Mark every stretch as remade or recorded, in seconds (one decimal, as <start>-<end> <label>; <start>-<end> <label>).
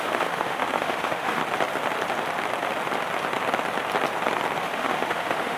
0.0-1.4 remade; 1.4-4.6 recorded; 4.6-5.6 remade